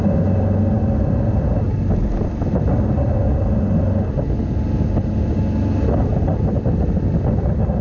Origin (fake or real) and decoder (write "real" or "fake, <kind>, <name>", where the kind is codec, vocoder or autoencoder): real